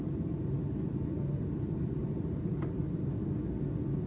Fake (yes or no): no